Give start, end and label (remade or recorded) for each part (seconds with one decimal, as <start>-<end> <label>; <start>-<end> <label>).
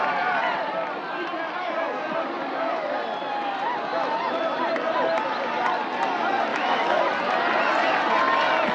0.0-6.5 recorded; 6.5-7.0 remade; 7.0-8.7 recorded